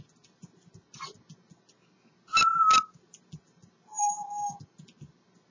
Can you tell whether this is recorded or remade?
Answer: recorded